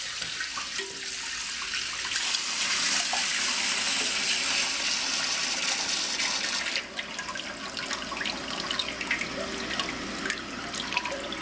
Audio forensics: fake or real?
real